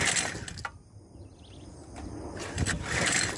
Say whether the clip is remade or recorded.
recorded